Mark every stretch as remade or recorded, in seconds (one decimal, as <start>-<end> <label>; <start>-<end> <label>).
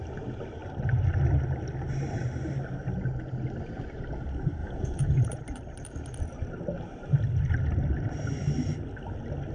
0.0-4.6 recorded; 4.6-5.4 remade; 5.4-9.5 recorded